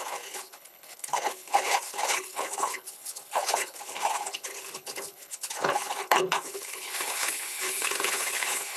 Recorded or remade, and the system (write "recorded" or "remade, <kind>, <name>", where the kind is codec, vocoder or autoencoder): remade, codec, HILCodec